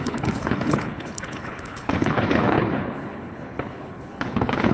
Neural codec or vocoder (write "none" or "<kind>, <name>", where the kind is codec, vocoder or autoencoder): codec, HILCodec